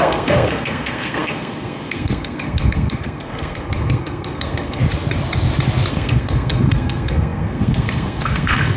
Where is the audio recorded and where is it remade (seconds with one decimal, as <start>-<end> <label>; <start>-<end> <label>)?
0.0-4.8 remade; 4.8-5.9 recorded; 5.9-8.8 remade